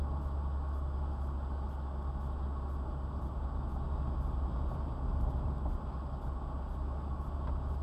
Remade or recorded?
recorded